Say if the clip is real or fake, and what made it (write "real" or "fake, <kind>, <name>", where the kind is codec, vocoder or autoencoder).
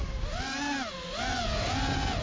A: real